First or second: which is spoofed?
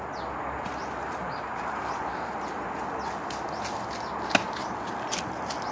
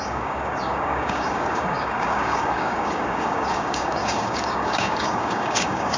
second